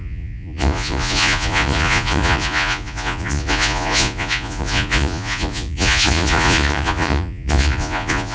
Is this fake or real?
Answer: fake